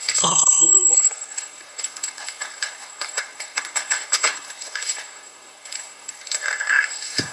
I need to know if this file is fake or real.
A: fake